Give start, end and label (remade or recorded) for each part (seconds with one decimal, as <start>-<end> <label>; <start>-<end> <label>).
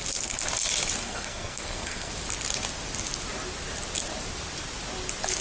0.0-1.0 recorded; 1.0-2.1 remade; 2.1-5.4 recorded